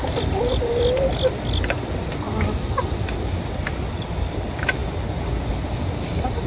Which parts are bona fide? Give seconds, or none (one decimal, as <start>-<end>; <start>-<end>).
none